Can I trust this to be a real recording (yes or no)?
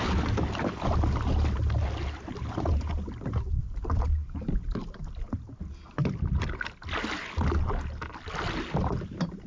yes